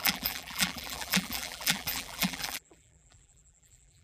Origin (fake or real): fake